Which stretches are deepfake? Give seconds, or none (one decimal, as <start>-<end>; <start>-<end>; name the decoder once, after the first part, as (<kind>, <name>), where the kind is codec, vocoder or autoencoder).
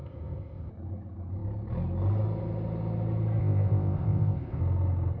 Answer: 0.0-0.7 (codec, ZipCodec); 3.4-4.6